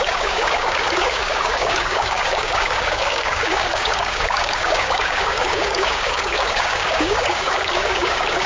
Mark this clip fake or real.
fake